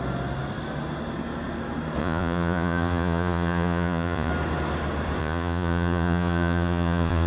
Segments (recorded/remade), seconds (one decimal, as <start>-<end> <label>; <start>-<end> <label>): 0.0-2.0 recorded; 2.0-4.3 remade; 4.3-5.2 recorded; 5.2-7.3 remade